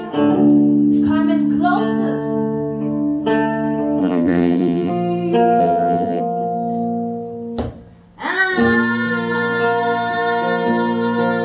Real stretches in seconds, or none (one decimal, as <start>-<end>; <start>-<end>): 0.0-4.0; 4.9-5.6; 6.2-11.4